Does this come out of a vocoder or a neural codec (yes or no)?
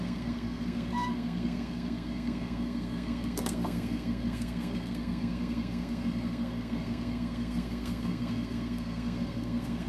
yes